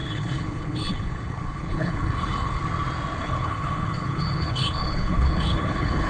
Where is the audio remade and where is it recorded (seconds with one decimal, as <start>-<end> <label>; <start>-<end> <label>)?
0.0-2.6 remade; 2.6-3.2 recorded; 3.2-6.1 remade